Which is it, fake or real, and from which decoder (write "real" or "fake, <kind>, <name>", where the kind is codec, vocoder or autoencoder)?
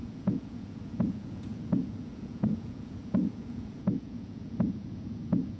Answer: fake, vocoder, Vocos